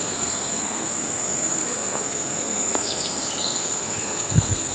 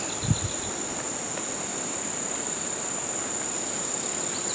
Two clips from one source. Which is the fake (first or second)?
first